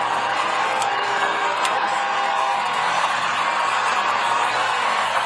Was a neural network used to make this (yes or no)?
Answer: yes